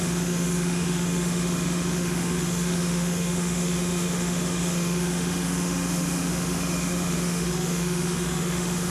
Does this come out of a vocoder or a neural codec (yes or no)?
yes